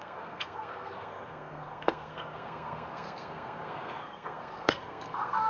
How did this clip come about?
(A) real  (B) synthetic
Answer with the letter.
B